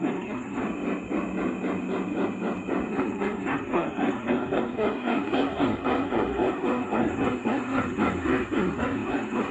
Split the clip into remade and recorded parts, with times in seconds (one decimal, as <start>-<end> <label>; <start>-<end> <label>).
0.0-0.6 remade; 0.6-2.9 recorded; 2.9-9.5 remade